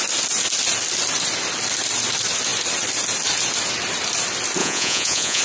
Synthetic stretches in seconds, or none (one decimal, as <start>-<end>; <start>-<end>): 4.6-5.4